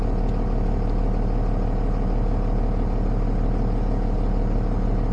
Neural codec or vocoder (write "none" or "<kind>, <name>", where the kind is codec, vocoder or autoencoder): none